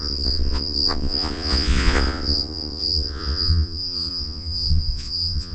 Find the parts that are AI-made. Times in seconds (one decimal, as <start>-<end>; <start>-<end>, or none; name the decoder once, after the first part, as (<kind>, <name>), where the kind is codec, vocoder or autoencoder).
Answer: 0.0-5.5 (vocoder, Vocos)